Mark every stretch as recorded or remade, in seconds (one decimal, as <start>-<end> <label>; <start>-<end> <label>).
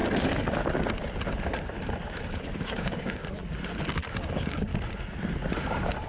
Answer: 0.0-2.3 recorded; 2.3-3.4 remade; 3.4-4.3 recorded; 4.3-4.7 remade; 4.7-5.6 recorded; 5.6-6.1 remade